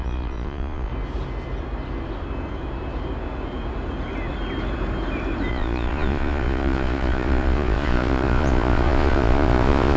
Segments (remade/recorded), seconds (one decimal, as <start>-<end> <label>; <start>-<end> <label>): 0.0-0.9 remade; 0.9-5.5 recorded; 5.5-10.0 remade